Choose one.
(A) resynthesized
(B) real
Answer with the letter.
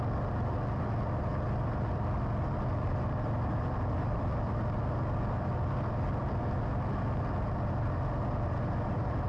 B